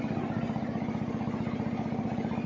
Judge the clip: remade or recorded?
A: recorded